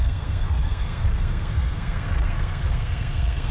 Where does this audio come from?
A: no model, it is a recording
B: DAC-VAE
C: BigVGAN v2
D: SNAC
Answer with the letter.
D